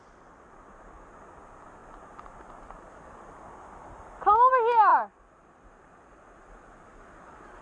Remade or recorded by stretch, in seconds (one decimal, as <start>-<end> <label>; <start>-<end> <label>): 0.0-4.9 recorded; 4.9-6.4 remade; 6.4-7.6 recorded

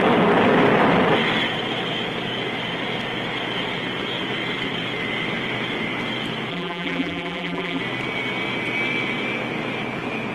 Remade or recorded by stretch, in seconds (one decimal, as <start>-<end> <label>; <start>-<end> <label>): 0.0-6.5 recorded; 6.5-7.8 remade; 7.8-10.3 recorded

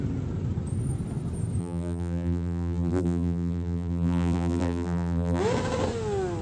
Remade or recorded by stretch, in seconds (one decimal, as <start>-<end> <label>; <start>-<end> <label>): 0.0-1.6 recorded; 1.6-5.4 remade; 5.4-6.4 recorded

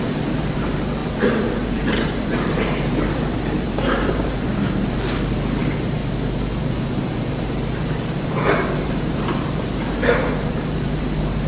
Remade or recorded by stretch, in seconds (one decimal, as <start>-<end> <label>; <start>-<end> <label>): 0.0-6.0 remade; 6.0-6.6 recorded; 6.6-11.5 remade

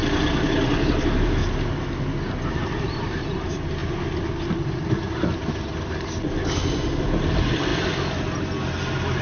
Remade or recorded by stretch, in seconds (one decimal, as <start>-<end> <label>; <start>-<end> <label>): 0.0-0.6 recorded; 0.6-1.4 remade; 1.4-2.5 recorded; 2.5-3.8 remade; 3.8-7.0 recorded; 7.0-7.7 remade; 7.7-9.2 recorded